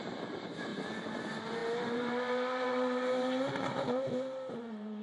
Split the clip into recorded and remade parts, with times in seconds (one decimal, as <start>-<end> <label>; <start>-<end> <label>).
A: 0.0-0.7 remade; 0.7-1.2 recorded; 1.2-5.0 remade